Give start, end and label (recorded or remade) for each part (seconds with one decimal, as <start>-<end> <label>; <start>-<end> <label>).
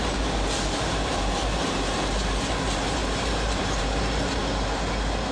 0.0-4.4 remade; 4.4-5.3 recorded